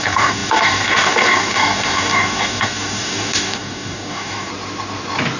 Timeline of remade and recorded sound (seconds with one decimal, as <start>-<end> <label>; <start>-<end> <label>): 0.0-4.5 remade; 4.5-5.4 recorded